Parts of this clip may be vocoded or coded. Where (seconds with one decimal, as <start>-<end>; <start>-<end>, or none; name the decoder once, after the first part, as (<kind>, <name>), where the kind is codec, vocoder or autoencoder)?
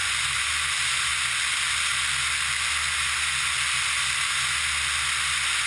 0.0-0.5 (vocoder, Vocos)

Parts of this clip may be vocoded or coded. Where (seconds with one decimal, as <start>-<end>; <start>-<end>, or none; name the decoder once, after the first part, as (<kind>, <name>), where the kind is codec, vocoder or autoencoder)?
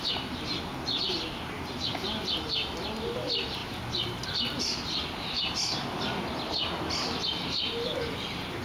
none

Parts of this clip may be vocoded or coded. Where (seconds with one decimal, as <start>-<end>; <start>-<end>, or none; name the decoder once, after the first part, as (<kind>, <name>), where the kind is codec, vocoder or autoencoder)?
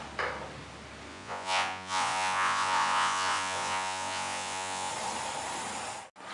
1.1-4.9 (vocoder, Vocos)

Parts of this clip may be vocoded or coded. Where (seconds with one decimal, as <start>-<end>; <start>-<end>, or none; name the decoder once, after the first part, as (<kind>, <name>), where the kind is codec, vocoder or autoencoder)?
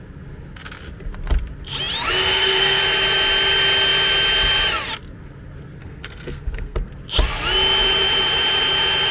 2.2-2.8 (codec, SNAC); 5.8-6.9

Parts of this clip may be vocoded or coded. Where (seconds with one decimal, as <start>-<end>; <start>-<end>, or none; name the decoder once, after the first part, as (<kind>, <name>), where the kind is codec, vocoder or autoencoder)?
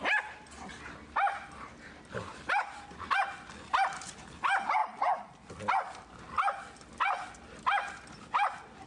none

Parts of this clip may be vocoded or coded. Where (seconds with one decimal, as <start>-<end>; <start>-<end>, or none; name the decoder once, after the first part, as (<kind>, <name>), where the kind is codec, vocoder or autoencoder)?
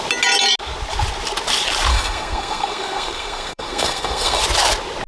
1.9-4.4 (codec, SNAC)